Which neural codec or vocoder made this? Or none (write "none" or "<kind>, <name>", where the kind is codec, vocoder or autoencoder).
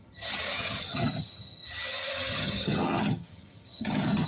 vocoder, HiFi-GAN